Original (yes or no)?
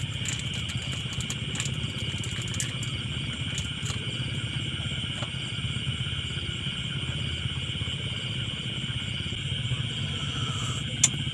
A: yes